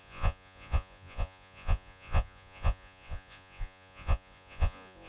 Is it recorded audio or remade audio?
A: remade